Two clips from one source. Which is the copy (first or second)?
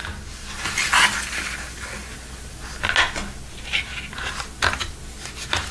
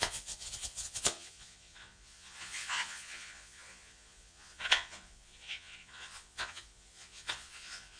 second